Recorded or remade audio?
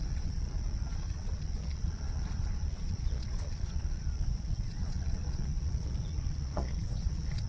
remade